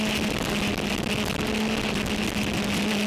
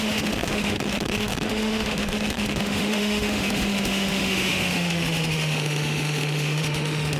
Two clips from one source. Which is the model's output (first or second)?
second